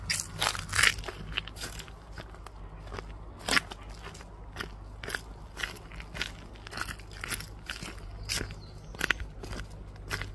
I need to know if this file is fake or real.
real